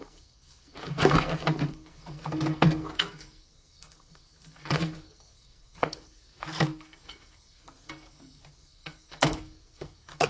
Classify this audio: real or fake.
fake